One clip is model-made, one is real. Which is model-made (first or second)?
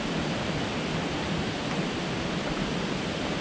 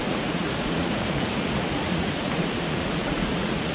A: second